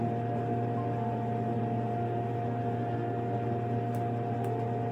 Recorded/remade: recorded